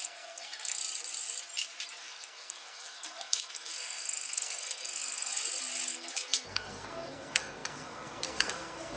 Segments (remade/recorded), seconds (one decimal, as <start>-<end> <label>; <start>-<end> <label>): 0.0-0.8 remade; 0.8-2.0 recorded; 2.0-5.3 remade; 5.3-5.9 recorded; 5.9-9.0 remade